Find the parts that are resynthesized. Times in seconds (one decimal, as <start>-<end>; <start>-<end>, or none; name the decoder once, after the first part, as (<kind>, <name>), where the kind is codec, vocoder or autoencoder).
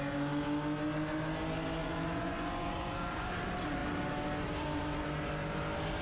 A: 1.8-3.3 (vocoder, Vocos)